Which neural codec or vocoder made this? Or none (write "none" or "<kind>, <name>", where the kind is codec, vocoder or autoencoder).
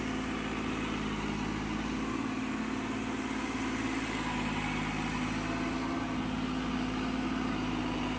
none